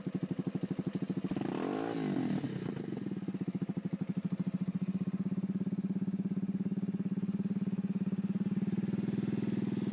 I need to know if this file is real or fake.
real